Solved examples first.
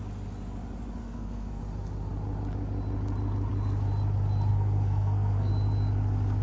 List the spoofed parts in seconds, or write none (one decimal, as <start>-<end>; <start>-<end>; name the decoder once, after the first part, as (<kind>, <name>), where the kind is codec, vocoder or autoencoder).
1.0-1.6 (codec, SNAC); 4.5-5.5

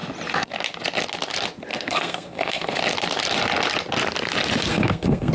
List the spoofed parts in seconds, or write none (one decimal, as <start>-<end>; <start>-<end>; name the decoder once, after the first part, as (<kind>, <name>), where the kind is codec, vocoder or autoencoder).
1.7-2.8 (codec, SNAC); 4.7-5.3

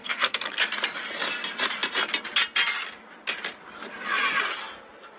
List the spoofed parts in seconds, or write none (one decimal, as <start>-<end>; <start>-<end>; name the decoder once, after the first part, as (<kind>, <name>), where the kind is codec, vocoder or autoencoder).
0.0-0.6 (codec, SNAC)